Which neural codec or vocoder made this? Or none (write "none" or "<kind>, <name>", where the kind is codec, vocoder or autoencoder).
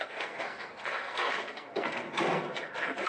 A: codec, SNAC